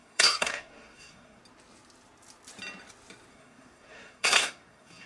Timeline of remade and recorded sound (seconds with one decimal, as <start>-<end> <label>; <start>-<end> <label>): 0.0-1.4 remade; 1.4-3.3 recorded; 3.3-5.1 remade